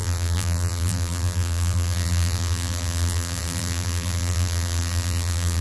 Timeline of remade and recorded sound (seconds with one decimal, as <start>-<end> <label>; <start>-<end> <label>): 0.0-5.6 remade